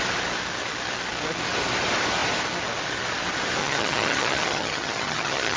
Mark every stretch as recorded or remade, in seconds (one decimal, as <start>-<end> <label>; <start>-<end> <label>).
0.0-3.6 recorded; 3.6-5.6 remade